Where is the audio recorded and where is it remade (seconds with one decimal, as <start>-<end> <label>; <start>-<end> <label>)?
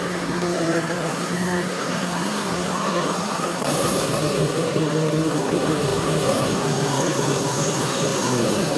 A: 0.0-8.8 remade